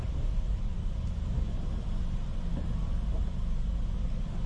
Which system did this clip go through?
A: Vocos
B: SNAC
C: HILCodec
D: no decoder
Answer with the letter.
D